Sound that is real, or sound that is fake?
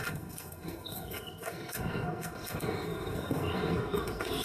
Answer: fake